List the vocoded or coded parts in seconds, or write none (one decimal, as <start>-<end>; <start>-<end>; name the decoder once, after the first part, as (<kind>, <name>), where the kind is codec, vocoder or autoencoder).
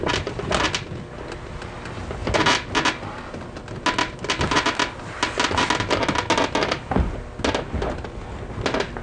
none